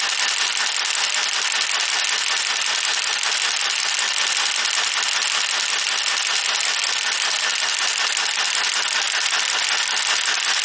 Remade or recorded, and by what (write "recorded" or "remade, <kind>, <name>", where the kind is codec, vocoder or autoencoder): recorded